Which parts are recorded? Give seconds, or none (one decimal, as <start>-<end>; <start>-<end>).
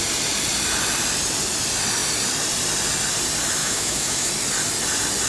0.0-3.6; 4.3-5.3